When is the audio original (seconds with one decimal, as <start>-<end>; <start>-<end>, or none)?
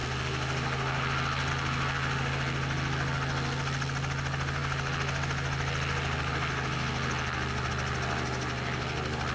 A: 0.0-9.3